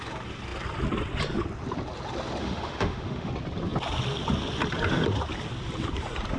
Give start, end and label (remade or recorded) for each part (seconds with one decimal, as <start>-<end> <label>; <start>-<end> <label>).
0.0-2.4 recorded; 2.4-3.3 remade; 3.3-6.4 recorded